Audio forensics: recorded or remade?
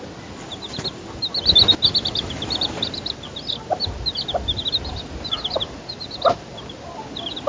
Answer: recorded